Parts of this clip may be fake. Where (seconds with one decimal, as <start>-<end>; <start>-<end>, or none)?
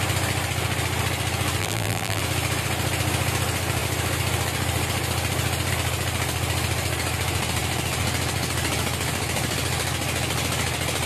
1.6-2.2